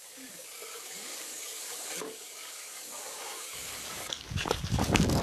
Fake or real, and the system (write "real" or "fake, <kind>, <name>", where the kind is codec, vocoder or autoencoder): fake, codec, DAC